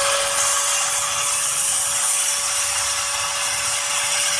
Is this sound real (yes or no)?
yes